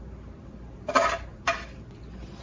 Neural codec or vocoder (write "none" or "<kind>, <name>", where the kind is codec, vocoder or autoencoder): none